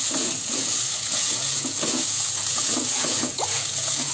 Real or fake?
fake